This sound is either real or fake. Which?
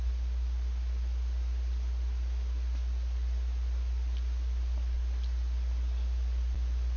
real